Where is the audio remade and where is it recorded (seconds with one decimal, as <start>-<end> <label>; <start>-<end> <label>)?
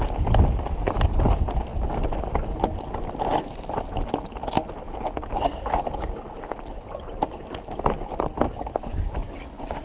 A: 0.0-9.8 recorded